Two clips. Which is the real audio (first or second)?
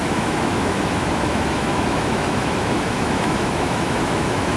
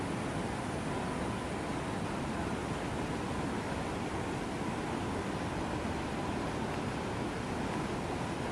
second